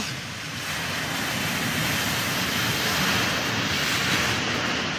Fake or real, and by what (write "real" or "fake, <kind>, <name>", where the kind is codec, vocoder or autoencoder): real